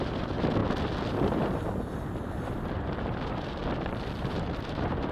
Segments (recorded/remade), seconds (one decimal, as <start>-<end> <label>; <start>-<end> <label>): 0.0-0.6 remade; 0.6-1.1 recorded; 1.1-3.6 remade; 3.6-4.2 recorded; 4.2-5.1 remade